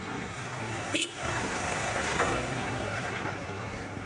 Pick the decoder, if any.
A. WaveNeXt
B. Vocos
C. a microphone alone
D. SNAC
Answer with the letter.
D